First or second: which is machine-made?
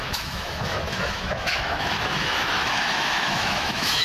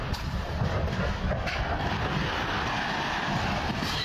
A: first